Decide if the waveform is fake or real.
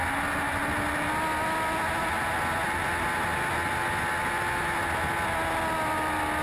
real